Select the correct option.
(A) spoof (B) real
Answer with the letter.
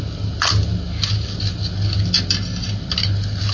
B